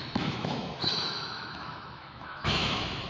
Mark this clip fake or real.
fake